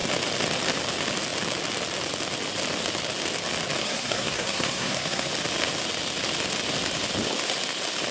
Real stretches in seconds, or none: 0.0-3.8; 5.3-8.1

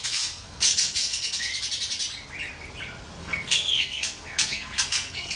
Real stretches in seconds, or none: 1.5-3.2

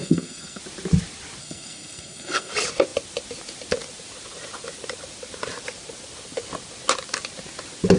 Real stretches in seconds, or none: 0.6-1.4; 2.5-8.0

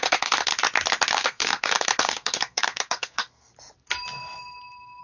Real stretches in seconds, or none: 0.5-1.1; 3.5-5.0

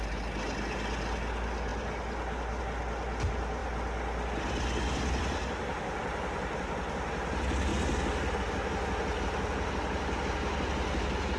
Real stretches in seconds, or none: 0.0-11.4